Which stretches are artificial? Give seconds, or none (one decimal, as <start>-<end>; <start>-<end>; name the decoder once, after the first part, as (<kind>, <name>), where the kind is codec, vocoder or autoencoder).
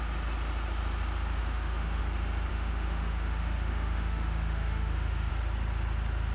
1.4-2.0 (autoencoder, DAC-VAE); 2.5-5.3